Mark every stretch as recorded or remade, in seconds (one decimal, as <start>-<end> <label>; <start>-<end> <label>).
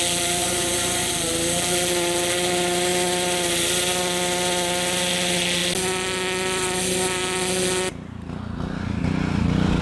0.0-0.4 recorded; 0.4-1.1 remade; 1.1-9.8 recorded